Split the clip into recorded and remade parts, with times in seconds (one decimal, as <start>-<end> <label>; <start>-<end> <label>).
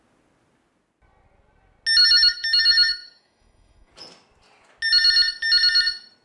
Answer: 0.0-2.0 recorded; 2.0-3.9 remade; 3.9-6.2 recorded